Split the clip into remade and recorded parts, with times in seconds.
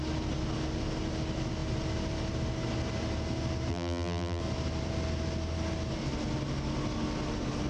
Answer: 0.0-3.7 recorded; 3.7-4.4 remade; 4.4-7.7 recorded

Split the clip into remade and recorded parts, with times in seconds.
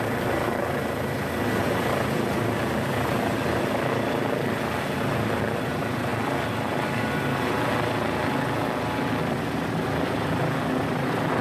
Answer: 0.0-1.6 recorded; 1.6-3.9 remade; 3.9-11.4 recorded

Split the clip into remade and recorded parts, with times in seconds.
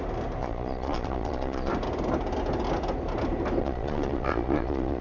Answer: 0.0-0.4 recorded; 0.4-1.7 remade; 1.7-3.6 recorded; 3.6-5.0 remade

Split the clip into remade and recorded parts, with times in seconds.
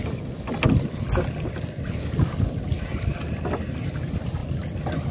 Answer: 0.0-5.1 recorded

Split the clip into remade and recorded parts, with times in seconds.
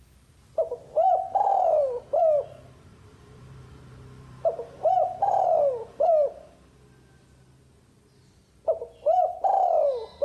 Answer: 0.0-1.5 recorded; 1.5-2.1 remade; 2.1-2.9 recorded; 2.9-6.5 remade; 6.5-10.2 recorded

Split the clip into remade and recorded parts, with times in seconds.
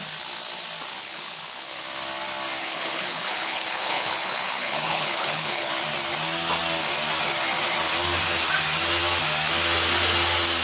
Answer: 0.0-1.0 recorded; 1.0-1.8 remade; 1.8-2.6 recorded; 2.6-5.7 remade; 5.7-10.6 recorded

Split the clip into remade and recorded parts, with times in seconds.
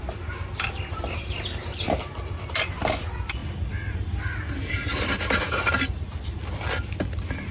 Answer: 0.0-7.5 recorded